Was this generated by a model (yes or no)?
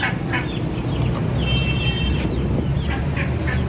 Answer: no